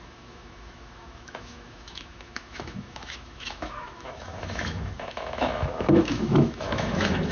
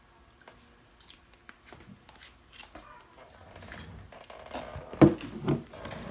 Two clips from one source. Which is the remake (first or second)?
first